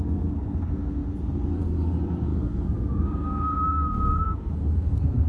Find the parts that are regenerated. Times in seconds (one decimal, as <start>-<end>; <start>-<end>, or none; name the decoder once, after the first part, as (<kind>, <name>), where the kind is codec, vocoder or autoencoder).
0.0-5.3 (codec, SNAC)